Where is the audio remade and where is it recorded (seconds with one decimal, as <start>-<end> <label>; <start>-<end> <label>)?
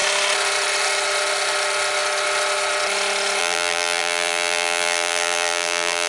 0.0-3.4 recorded; 3.4-6.1 remade